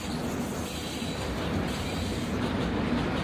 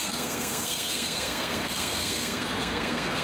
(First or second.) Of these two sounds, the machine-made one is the second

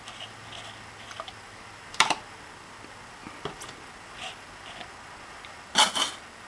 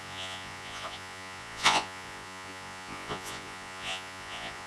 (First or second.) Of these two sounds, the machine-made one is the second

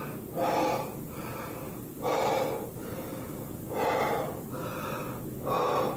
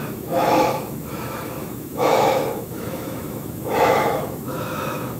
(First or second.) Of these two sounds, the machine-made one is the second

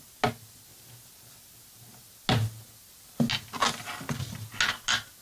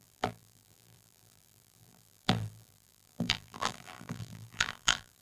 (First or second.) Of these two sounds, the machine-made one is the second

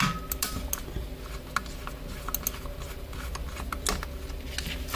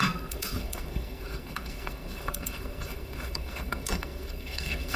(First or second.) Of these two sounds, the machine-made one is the second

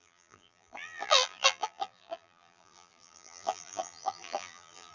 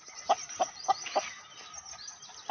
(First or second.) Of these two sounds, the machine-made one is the first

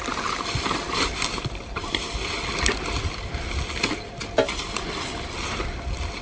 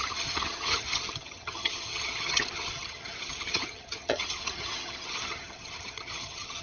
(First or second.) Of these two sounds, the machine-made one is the second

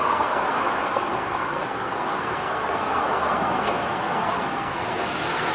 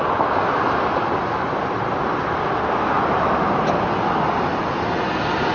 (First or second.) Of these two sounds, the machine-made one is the first